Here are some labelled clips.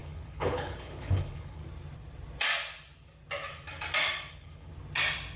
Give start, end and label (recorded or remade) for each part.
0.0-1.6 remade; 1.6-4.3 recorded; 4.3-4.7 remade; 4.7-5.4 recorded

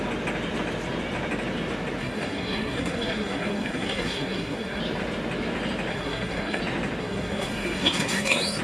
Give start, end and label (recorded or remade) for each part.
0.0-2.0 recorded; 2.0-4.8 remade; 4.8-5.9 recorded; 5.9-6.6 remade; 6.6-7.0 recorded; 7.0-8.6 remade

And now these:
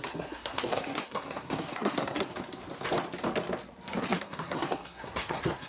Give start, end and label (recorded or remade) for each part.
0.0-2.3 remade; 2.3-4.0 recorded; 4.0-5.7 remade